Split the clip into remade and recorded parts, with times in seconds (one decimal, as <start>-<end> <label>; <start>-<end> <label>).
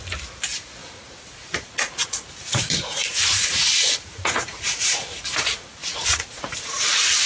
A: 0.0-0.8 recorded; 0.8-5.2 remade; 5.2-5.8 recorded; 5.8-6.4 remade; 6.4-7.3 recorded